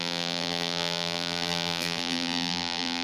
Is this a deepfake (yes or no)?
yes